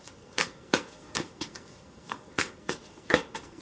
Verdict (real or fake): fake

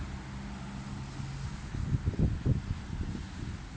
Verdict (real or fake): real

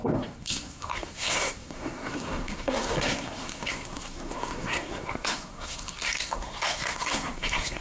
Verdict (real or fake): fake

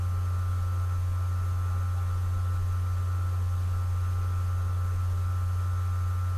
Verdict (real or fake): real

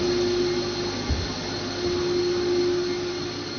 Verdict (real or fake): real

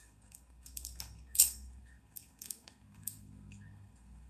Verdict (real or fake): fake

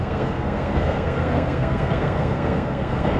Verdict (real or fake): fake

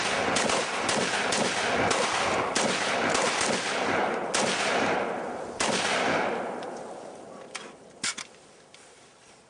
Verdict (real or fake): real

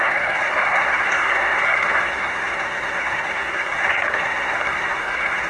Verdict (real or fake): fake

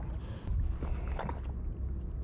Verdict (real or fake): real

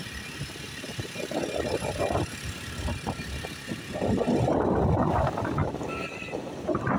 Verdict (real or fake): real